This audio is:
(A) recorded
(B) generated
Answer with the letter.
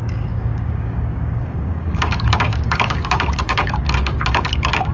B